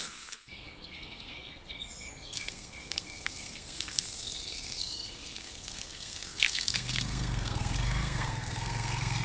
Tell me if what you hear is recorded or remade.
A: remade